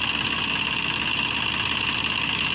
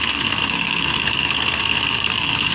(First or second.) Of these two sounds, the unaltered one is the first